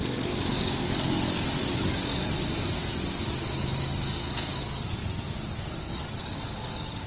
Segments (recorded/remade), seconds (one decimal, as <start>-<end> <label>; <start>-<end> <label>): 0.0-2.1 remade; 2.1-4.6 recorded; 4.6-5.0 remade; 5.0-6.2 recorded; 6.2-7.1 remade